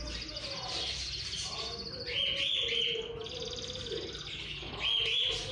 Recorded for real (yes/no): yes